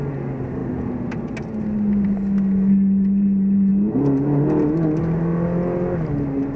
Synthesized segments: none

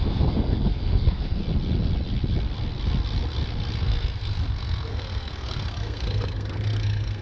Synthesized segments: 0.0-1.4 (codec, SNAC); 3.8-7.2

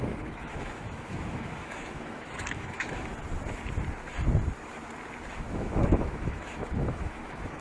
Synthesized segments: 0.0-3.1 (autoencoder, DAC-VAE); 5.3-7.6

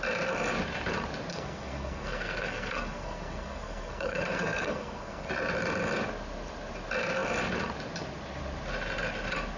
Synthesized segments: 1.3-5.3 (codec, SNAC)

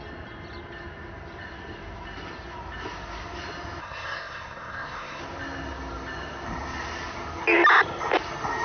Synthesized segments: 3.8-5.2 (codec, SNAC)

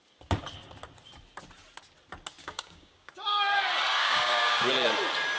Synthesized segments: 2.4-3.1 (codec, DAC); 4.0-4.7

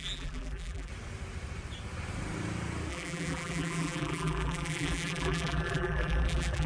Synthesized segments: 0.0-0.9 (vocoder, BigVGAN v2); 2.9-6.7

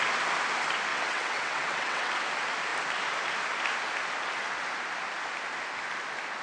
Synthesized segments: 0.9-2.1 (vocoder, WaveNeXt)